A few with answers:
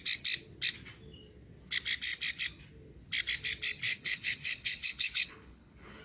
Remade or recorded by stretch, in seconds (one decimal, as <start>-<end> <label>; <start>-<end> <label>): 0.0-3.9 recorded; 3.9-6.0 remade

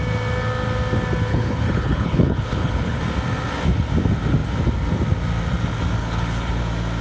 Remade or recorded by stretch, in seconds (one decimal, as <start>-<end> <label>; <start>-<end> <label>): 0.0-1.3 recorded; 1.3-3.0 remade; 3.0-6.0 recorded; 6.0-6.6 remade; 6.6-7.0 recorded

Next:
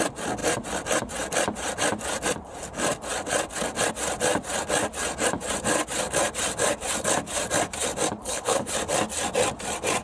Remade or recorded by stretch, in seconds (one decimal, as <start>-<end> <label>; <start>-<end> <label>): 0.0-8.2 recorded; 8.2-8.7 remade; 8.7-10.0 recorded

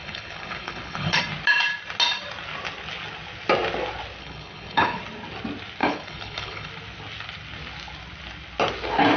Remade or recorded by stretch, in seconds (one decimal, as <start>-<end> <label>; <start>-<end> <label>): 0.0-1.2 remade; 1.2-4.2 recorded; 4.2-5.0 remade; 5.0-5.8 recorded; 5.8-6.7 remade; 6.7-9.2 recorded